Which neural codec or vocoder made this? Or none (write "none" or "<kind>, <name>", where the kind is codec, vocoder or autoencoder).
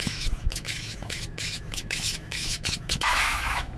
autoencoder, DAC-VAE